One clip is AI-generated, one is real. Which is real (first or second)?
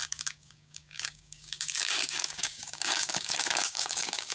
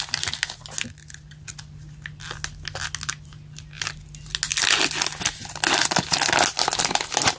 second